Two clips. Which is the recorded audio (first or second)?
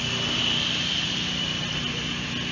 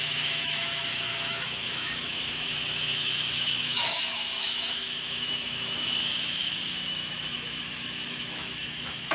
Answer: first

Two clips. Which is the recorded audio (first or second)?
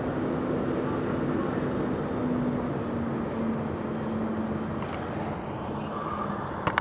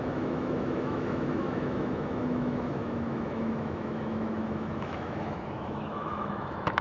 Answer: first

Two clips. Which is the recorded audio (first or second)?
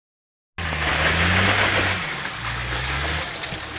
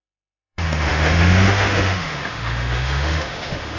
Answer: first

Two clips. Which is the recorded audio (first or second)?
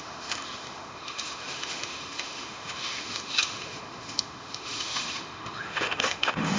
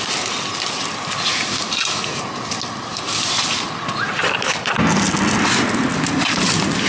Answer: second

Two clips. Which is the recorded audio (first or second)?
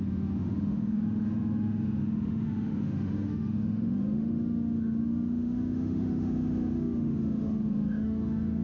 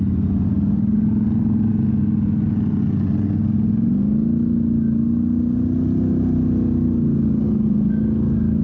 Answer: second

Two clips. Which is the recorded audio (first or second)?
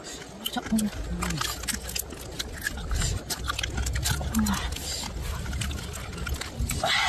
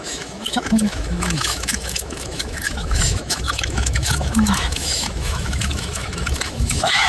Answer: first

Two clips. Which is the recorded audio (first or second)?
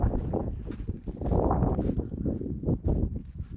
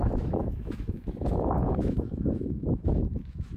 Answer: first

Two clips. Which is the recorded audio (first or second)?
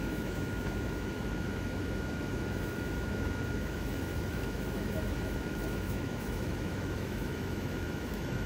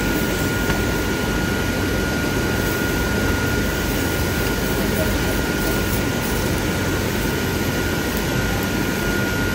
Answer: second